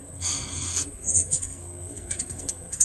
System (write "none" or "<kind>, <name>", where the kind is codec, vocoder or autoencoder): codec, SNAC